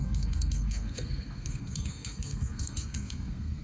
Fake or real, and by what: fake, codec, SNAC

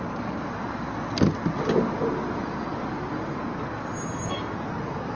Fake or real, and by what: real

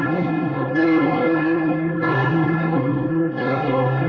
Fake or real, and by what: fake, codec, SNAC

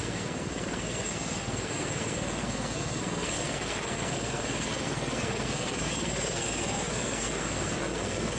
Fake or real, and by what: fake, codec, SNAC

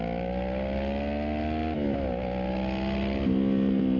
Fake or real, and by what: real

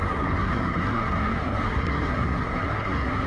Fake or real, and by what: fake, codec, SNAC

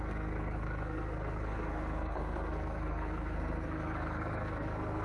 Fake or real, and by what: fake, codec, SNAC